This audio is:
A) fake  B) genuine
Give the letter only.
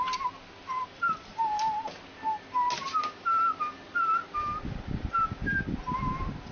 B